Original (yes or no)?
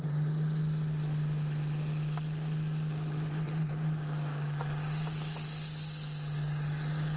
yes